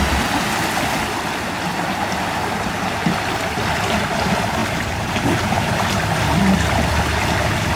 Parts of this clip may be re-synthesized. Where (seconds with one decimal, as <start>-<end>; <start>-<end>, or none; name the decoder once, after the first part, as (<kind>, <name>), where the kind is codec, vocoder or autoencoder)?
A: 4.6-5.7 (vocoder, BigVGAN v2)